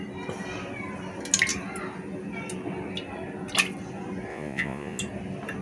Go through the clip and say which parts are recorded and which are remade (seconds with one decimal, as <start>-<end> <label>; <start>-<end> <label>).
0.0-4.3 recorded; 4.3-5.0 remade; 5.0-5.6 recorded